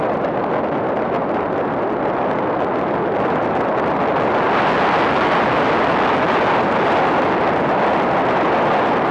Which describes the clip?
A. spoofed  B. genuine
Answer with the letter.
B